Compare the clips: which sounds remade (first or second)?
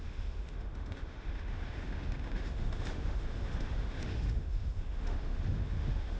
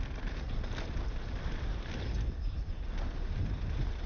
first